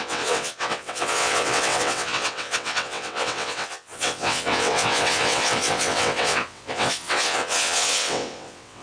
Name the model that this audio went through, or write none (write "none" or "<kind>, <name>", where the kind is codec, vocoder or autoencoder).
vocoder, WaveNeXt